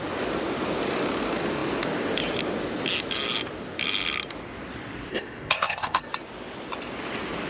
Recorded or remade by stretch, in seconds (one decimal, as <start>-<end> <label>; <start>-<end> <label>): 0.0-5.1 recorded; 5.1-6.0 remade; 6.0-7.5 recorded